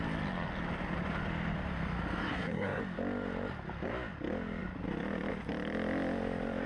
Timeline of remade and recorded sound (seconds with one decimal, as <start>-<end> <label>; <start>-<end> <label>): 0.0-2.2 recorded; 2.2-2.8 remade; 2.8-6.7 recorded